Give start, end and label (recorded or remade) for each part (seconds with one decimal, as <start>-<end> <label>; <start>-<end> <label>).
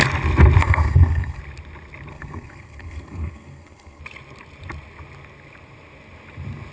0.0-0.6 recorded; 0.6-1.4 remade; 1.4-2.1 recorded; 2.1-4.0 remade; 4.0-6.7 recorded